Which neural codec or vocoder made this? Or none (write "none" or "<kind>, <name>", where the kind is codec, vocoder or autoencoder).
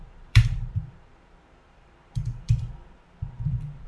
vocoder, BigVGAN v2